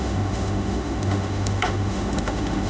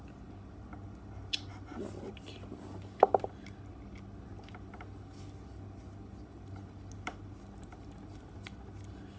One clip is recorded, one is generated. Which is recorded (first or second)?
second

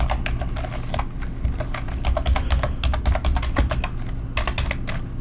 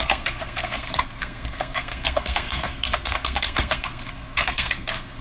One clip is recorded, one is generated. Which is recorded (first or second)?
first